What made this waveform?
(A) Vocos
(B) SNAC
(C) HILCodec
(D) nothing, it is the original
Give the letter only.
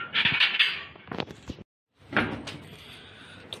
D